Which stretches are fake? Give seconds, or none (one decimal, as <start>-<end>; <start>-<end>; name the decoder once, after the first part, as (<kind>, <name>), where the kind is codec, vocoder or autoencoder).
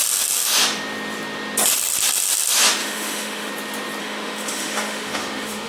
2.8-3.5 (autoencoder, DAC-VAE); 4.0-5.7